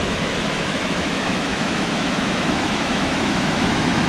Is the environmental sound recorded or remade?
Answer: remade